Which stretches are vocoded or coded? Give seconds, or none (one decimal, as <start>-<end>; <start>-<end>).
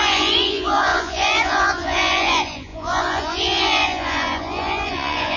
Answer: 0.0-5.4